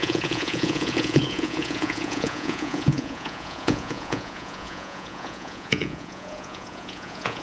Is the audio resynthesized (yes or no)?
yes